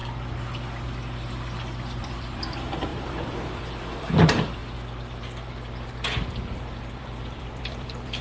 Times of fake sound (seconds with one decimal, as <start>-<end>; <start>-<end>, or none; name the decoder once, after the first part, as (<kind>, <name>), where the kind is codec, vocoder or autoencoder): 2.0-4.6 (vocoder, BigVGAN v2); 6.8-8.2